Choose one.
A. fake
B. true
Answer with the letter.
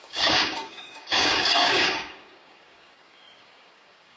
A